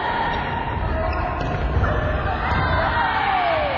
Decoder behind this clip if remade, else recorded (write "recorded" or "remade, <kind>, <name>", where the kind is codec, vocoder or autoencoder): recorded